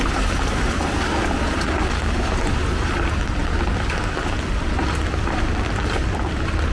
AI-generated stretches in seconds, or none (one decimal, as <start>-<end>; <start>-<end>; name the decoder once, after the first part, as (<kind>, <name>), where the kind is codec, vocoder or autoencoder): none